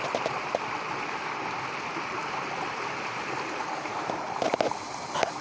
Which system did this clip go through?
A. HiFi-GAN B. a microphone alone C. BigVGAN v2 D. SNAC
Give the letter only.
B